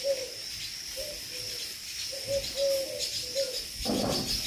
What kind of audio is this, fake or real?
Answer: real